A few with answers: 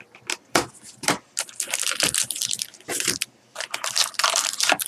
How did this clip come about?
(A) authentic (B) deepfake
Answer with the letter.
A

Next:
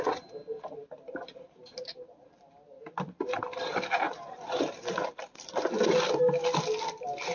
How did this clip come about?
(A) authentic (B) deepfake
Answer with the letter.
A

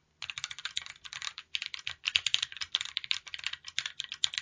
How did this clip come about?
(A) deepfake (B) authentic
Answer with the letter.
B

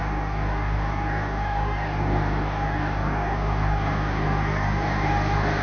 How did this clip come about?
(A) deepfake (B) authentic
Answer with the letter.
A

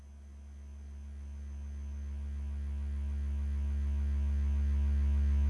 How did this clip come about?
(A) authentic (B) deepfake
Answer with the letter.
A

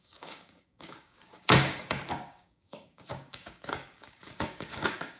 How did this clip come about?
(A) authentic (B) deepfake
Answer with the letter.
B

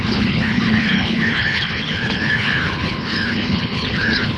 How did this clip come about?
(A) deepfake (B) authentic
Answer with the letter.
A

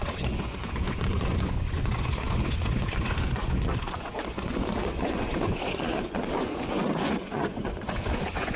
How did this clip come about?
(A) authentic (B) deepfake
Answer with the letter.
B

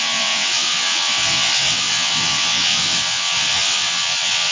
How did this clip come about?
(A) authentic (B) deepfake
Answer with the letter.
B